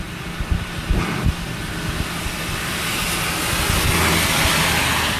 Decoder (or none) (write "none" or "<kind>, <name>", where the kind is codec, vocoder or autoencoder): none